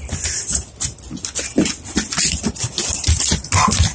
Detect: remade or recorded recorded